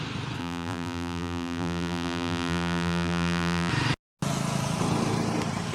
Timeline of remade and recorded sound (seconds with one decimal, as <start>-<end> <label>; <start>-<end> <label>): 0.0-0.4 recorded; 0.4-3.7 remade; 3.7-5.7 recorded

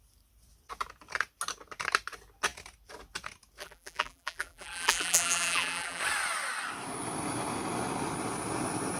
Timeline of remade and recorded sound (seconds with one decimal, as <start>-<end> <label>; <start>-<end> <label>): 0.0-3.6 recorded; 3.6-6.0 remade; 6.0-9.0 recorded

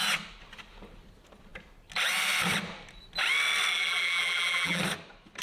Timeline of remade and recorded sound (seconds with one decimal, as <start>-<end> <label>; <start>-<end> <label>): 0.0-3.7 recorded; 3.7-4.8 remade; 4.8-5.4 recorded

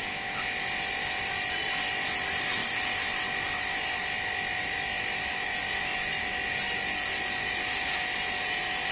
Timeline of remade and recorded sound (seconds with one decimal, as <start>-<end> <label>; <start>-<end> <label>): 0.0-8.9 recorded

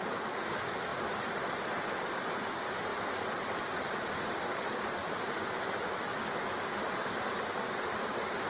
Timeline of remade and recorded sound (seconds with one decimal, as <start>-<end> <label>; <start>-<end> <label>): 0.0-0.9 recorded; 0.9-1.6 remade; 1.6-8.5 recorded

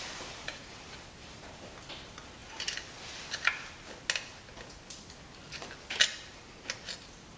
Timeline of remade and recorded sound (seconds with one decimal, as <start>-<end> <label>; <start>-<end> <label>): 0.0-7.4 recorded